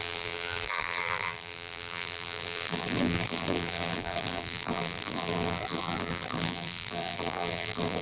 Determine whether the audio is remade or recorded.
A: remade